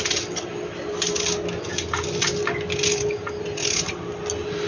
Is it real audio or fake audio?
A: real